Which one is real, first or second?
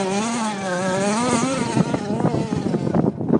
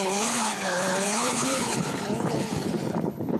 first